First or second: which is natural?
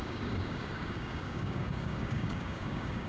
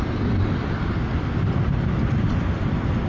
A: second